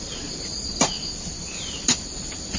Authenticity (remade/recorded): recorded